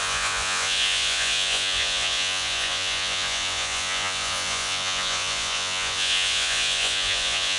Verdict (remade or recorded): remade